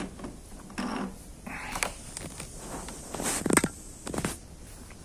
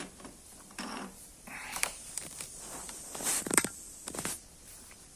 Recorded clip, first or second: first